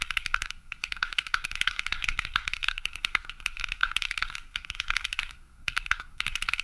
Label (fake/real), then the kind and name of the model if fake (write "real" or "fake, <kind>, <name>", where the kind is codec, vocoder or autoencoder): fake, codec, SNAC